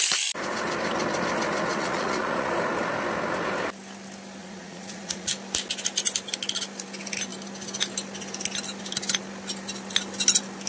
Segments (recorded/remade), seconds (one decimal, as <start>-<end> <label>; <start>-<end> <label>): 0.0-1.7 recorded; 1.7-2.5 remade; 2.5-4.4 recorded; 4.4-5.3 remade; 5.3-10.7 recorded